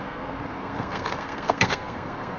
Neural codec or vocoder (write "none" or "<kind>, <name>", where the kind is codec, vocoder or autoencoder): codec, SNAC